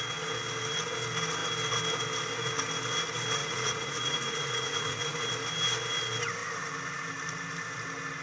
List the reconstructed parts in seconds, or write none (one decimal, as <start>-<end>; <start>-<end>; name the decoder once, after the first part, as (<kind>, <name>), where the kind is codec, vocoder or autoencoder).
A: 3.4-5.3 (vocoder, Vocos)